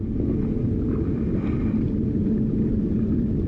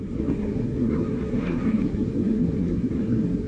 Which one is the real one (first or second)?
first